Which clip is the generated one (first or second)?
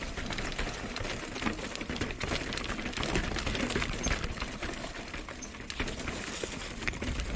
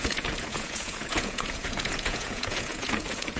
second